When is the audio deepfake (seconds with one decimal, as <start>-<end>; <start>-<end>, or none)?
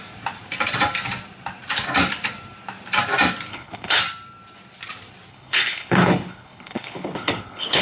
3.5-4.0; 5.3-7.8